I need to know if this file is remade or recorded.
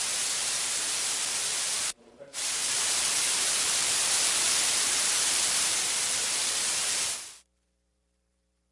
remade